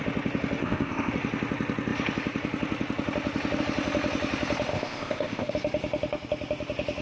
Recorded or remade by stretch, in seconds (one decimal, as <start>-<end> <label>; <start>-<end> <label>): 0.0-0.6 recorded; 0.6-1.1 remade; 1.1-4.7 recorded; 4.7-5.5 remade; 5.5-7.0 recorded